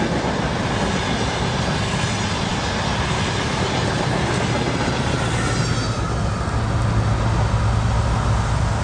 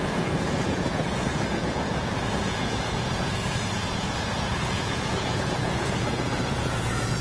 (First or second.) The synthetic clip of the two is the second